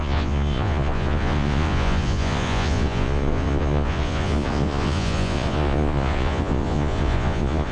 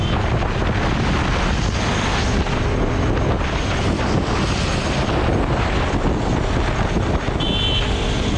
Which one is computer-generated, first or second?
first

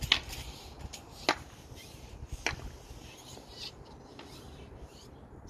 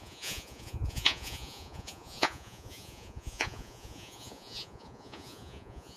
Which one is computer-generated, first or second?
second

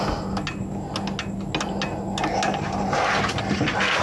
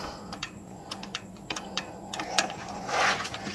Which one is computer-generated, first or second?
second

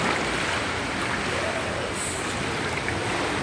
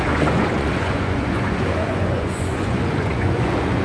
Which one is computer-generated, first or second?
second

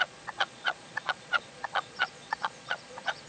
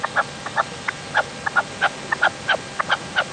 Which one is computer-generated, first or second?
first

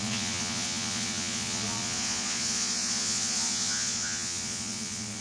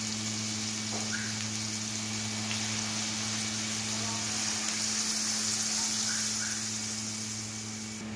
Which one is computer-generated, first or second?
first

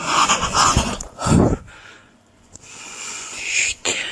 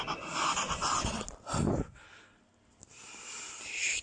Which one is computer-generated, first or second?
first